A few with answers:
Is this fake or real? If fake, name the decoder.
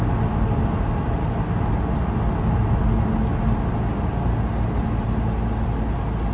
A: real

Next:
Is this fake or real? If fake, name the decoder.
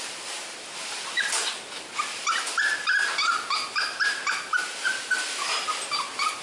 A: real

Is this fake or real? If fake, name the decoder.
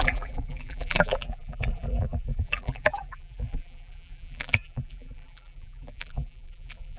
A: fake, vocoder, BigVGAN v2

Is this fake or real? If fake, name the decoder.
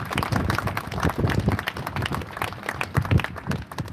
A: real